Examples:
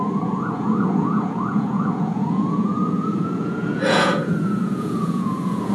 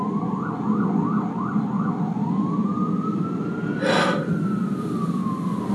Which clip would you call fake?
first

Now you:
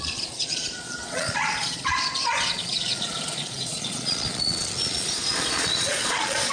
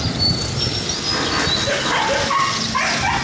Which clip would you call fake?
first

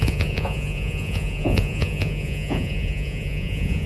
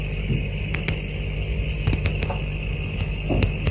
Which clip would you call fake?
first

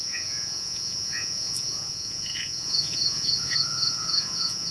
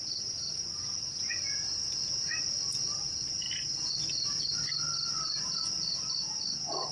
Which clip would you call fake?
first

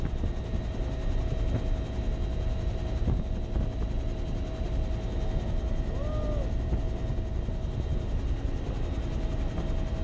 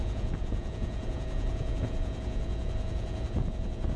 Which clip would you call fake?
second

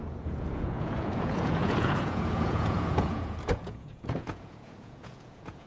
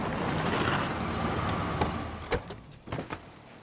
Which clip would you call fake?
first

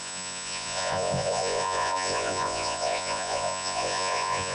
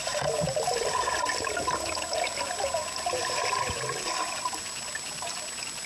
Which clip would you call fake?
first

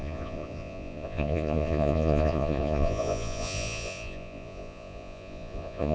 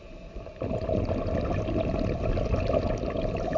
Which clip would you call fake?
first